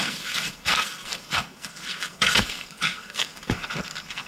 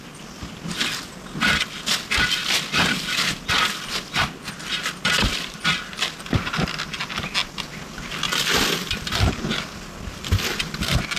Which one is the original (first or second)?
second